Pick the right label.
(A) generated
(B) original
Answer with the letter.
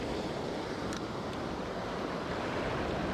B